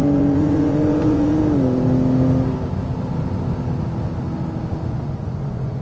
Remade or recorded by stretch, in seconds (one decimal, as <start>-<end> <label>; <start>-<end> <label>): 0.0-1.4 remade; 1.4-4.7 recorded; 4.7-5.8 remade